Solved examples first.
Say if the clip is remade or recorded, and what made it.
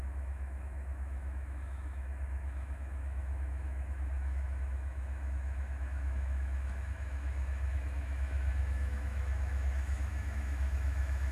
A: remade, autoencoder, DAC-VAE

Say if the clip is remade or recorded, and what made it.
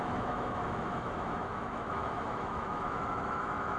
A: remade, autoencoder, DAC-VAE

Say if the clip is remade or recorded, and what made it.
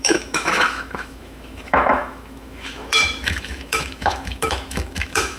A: remade, autoencoder, DAC-VAE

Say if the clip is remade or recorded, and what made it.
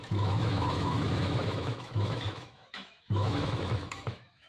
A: remade, autoencoder, DAC-VAE